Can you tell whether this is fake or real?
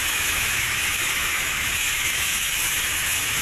fake